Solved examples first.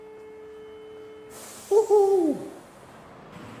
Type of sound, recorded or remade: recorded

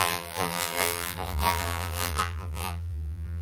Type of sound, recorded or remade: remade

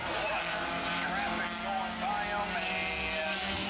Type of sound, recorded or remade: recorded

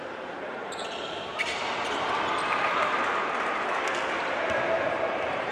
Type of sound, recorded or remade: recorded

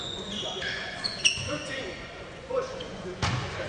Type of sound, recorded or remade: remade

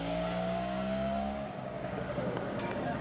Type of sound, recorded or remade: remade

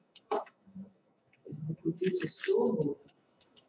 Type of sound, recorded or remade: remade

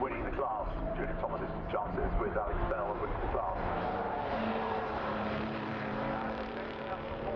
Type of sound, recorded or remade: remade